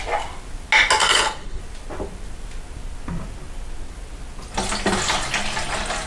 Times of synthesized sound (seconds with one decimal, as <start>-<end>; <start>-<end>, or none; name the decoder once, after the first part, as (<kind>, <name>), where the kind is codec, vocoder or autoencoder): 1.0-1.6 (codec, HILCodec)